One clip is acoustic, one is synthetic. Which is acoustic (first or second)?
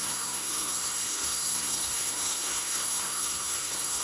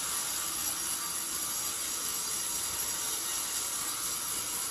second